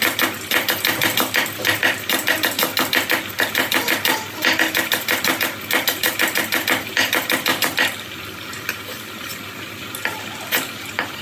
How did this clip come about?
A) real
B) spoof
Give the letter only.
A